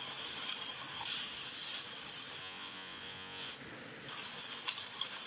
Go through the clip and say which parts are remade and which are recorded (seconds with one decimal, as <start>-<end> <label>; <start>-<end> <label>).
0.0-2.4 recorded; 2.4-3.5 remade; 3.5-5.3 recorded